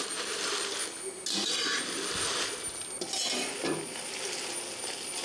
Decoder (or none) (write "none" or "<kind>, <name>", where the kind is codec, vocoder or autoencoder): none